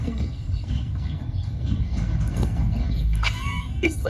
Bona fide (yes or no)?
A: no